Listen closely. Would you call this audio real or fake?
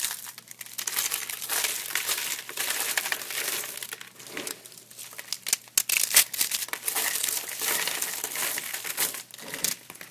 real